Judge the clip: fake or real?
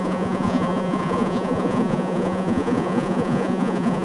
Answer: fake